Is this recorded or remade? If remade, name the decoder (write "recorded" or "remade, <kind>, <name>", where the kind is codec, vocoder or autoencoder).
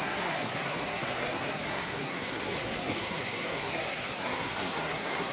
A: remade, codec, SNAC